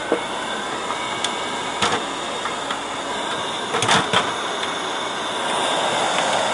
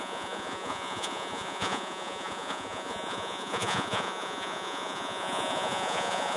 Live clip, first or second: first